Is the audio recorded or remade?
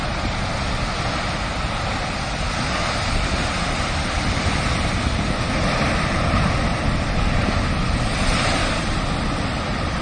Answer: recorded